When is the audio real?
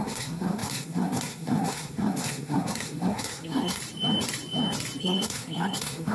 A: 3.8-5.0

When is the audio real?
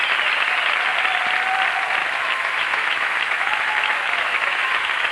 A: 0.0-2.0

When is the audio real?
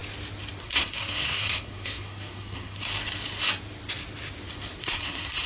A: 0.0-0.6; 2.8-4.8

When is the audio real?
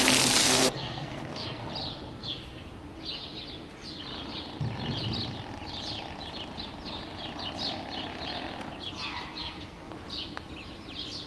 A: 0.0-0.4; 1.7-2.2; 2.7-9.4; 9.9-11.3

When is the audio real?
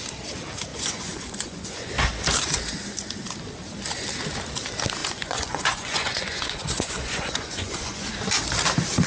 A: 0.0-0.7; 1.9-5.0; 8.1-9.1